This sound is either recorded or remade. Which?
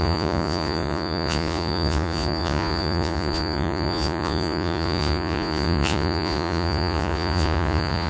remade